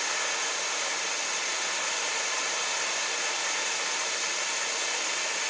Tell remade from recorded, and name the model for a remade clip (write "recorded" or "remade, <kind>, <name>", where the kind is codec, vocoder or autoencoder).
recorded